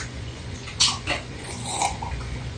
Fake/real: fake